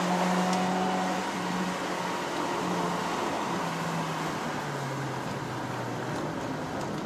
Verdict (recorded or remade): recorded